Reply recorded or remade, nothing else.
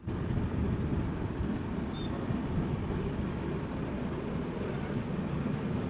recorded